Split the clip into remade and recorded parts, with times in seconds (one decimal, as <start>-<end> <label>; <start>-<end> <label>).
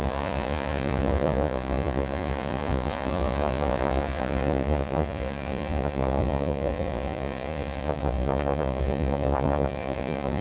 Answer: 0.0-10.4 remade